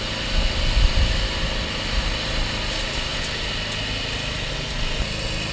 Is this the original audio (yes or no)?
yes